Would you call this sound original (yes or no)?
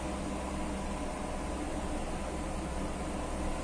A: yes